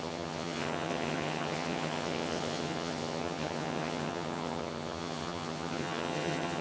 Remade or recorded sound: remade